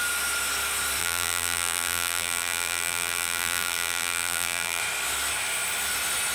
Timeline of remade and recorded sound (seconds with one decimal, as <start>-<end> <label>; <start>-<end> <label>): 0.0-1.0 recorded; 1.0-4.8 remade; 4.8-6.3 recorded